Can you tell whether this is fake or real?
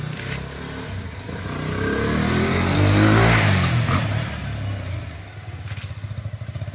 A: real